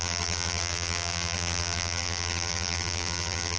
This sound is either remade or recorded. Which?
remade